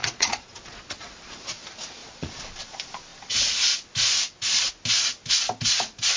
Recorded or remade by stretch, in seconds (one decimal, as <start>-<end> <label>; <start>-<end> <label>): 0.0-1.6 remade; 1.6-2.0 recorded; 2.0-2.5 remade; 2.5-6.2 recorded